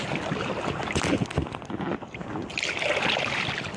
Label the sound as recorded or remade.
recorded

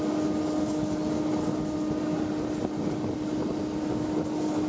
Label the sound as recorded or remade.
recorded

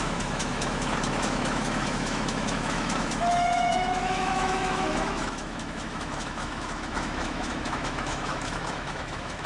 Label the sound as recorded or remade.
remade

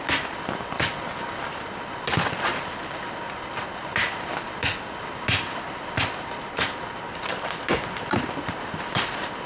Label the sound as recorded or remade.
remade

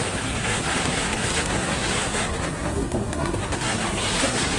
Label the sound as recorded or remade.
remade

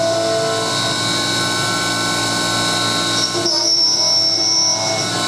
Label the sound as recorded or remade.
recorded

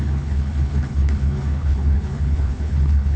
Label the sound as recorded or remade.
remade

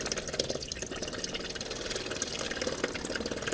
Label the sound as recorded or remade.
recorded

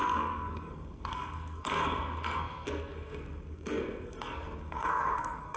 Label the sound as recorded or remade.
remade